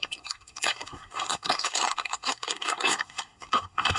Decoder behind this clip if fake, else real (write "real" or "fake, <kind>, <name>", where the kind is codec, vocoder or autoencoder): fake, codec, SNAC